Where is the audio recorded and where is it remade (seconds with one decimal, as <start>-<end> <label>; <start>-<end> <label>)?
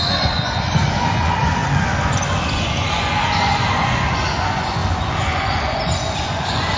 0.0-6.8 remade